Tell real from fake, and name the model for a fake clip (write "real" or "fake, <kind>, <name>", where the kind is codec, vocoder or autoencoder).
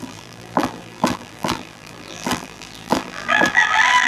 fake, vocoder, BigVGAN v2